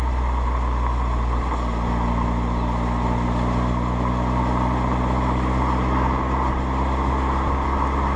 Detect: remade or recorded recorded